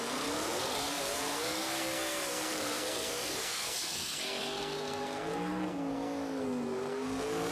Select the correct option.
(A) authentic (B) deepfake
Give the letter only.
B